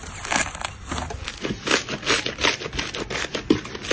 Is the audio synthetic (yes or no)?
no